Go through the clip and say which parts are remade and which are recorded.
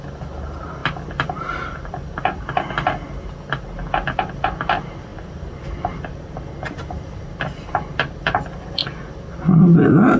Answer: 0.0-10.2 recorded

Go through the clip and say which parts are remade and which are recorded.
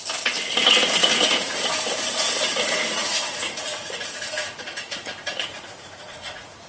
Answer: 0.0-2.5 recorded; 2.5-6.7 remade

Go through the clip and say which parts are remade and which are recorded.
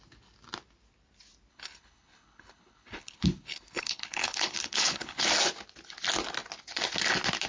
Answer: 0.0-1.5 recorded; 1.5-5.3 remade; 5.3-7.5 recorded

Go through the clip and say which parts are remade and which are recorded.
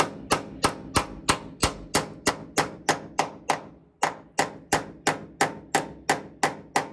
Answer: 0.0-6.9 recorded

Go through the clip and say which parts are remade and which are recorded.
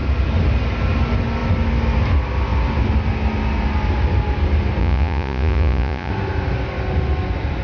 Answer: 0.0-4.8 recorded; 4.8-6.1 remade; 6.1-7.6 recorded